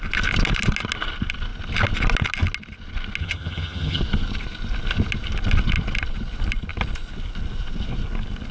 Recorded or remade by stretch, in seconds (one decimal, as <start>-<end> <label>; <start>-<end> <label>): 0.0-3.2 recorded; 3.2-4.0 remade; 4.0-8.5 recorded